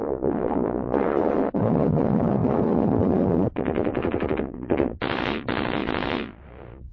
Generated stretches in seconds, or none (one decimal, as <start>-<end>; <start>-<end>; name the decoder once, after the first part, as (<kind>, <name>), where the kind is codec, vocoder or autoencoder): 0.0-6.9 (vocoder, Vocos)